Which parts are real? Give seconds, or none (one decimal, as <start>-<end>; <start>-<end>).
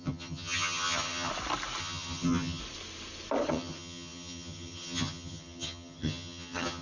1.3-1.8; 2.6-3.5